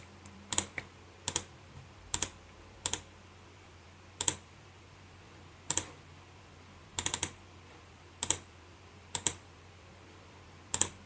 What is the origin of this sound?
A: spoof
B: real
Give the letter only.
A